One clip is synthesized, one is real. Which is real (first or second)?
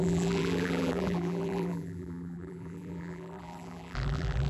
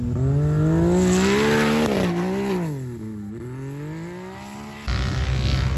second